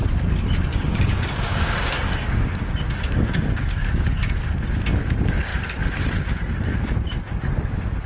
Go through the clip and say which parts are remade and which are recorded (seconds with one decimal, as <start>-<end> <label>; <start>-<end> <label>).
0.0-0.7 recorded; 0.7-4.3 remade; 4.3-8.1 recorded